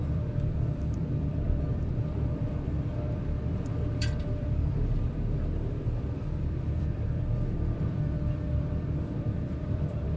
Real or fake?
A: fake